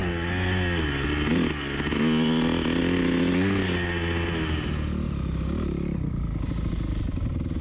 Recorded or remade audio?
recorded